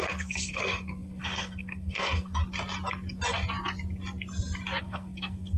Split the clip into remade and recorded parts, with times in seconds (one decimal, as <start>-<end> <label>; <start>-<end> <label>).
0.0-2.4 remade; 2.4-4.8 recorded; 4.8-5.6 remade